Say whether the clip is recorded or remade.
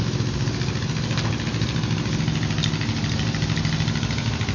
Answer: recorded